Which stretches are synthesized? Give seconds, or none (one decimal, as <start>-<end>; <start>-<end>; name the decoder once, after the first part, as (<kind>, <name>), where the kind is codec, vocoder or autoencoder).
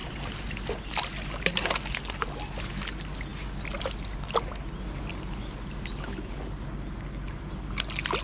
none